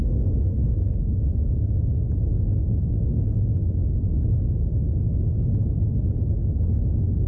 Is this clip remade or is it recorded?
recorded